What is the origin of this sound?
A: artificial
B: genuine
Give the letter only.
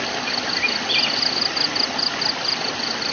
B